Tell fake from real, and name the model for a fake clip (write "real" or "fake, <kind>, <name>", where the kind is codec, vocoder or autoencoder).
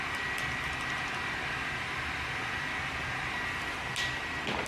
real